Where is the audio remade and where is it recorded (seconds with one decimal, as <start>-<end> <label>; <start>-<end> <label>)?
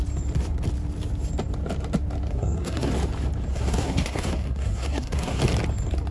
0.0-2.3 recorded; 2.3-2.9 remade; 2.9-3.5 recorded; 3.5-5.4 remade; 5.4-6.1 recorded